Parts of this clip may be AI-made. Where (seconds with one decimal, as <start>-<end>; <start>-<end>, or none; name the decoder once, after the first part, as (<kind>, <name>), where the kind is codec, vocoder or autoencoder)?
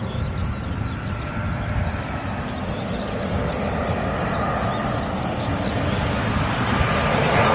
none